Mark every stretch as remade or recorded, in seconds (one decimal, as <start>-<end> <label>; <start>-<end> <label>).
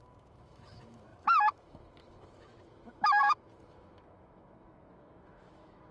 0.0-5.9 remade